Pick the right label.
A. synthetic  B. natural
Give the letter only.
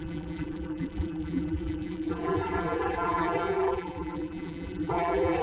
A